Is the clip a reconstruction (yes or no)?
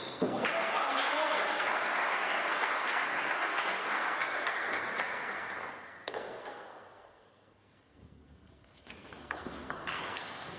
yes